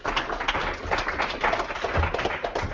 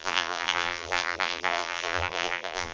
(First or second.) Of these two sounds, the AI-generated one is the second